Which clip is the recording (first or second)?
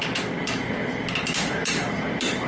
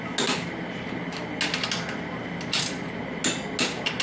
second